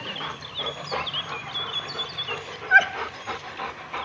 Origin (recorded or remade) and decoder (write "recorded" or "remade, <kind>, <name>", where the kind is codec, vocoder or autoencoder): recorded